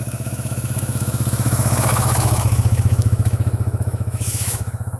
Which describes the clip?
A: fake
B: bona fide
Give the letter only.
A